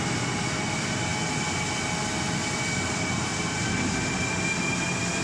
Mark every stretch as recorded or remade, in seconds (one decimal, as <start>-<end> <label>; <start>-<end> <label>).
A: 0.0-5.2 recorded